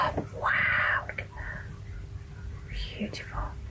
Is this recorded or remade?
recorded